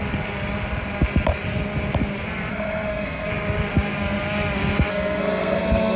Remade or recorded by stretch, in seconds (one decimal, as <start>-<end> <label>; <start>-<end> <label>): 0.0-2.5 recorded; 2.5-3.3 remade; 3.3-4.9 recorded; 4.9-6.0 remade